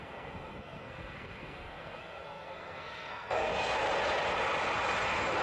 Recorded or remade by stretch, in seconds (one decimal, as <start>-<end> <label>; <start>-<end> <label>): 0.0-3.5 remade; 3.5-5.4 recorded